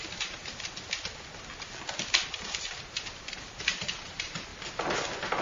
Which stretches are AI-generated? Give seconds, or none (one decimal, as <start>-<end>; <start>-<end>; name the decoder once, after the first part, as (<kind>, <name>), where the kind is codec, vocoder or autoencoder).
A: 0.0-0.4 (vocoder, BigVGAN v2); 3.6-4.5